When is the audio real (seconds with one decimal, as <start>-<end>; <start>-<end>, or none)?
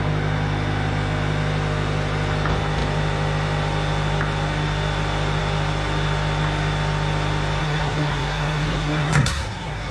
0.0-7.6